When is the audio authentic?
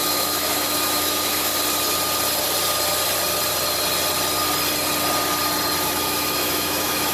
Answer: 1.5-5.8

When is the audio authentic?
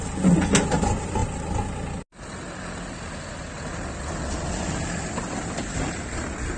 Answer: 0.0-6.6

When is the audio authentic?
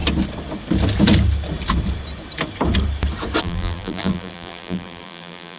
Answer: 0.0-3.4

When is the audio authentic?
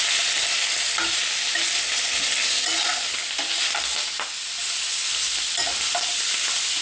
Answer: 0.0-6.8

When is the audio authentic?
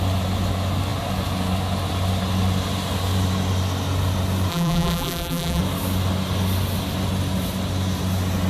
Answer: 0.0-4.5; 5.6-8.5